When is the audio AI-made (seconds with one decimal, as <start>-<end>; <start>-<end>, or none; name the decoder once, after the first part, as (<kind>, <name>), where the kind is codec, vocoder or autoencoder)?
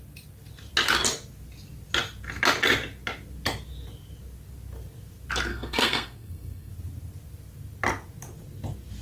5.5-6.7 (codec, SNAC)